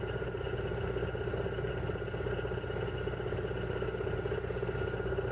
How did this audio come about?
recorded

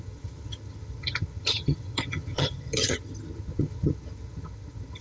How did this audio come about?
remade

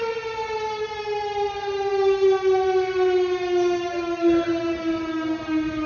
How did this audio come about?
recorded